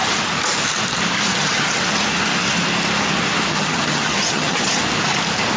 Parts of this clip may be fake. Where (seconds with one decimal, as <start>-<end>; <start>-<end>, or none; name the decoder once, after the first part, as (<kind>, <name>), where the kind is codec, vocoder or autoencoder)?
1.3-1.8 (vocoder, HiFi-GAN); 3.5-4.8